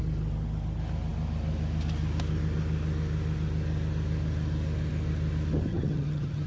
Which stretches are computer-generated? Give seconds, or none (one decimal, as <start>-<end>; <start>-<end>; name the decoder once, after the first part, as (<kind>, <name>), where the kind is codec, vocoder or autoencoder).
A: 5.7-6.5 (vocoder, HiFi-GAN)